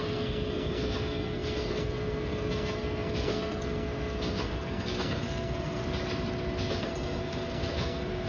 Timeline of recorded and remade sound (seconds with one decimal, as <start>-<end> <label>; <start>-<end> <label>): 0.0-5.8 remade; 5.8-6.8 recorded; 6.8-8.3 remade